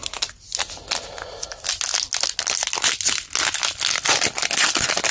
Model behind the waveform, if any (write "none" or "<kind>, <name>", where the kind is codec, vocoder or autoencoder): none